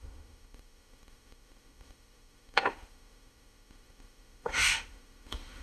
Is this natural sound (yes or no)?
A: no